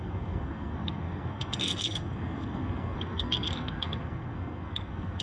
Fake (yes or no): yes